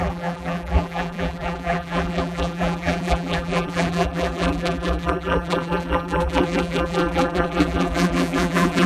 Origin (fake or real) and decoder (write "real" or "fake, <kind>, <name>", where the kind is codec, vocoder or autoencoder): fake, vocoder, BigVGAN v2